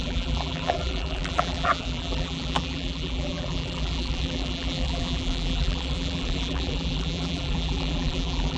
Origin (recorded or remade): remade